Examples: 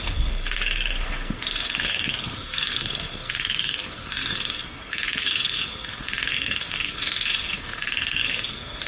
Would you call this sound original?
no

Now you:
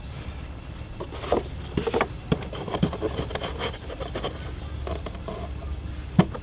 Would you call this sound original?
yes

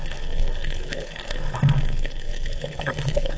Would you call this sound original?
no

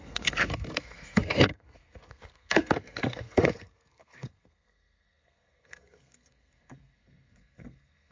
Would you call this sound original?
no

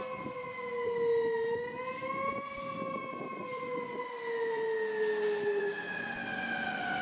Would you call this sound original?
yes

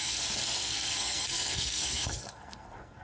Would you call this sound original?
no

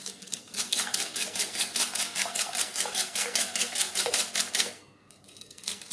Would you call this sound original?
no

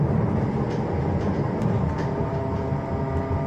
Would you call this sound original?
yes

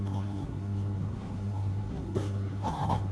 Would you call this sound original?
no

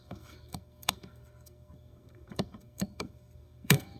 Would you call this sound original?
no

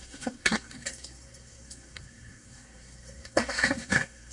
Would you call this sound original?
no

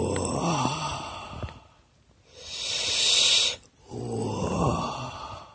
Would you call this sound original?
yes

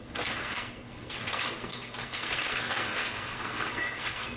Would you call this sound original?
no